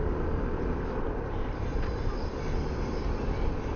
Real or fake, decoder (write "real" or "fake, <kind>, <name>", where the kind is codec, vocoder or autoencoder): fake, vocoder, BigVGAN v2